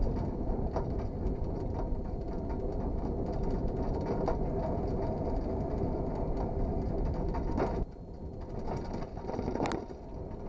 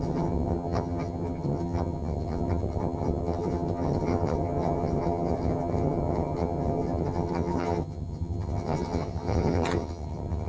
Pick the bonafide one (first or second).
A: first